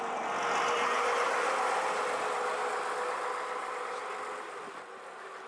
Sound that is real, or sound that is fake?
real